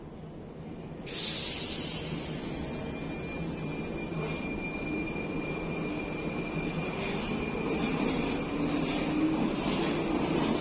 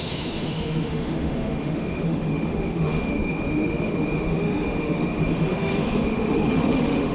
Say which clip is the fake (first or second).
second